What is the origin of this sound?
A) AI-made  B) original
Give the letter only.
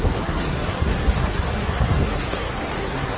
A